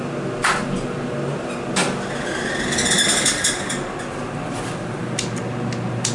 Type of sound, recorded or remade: recorded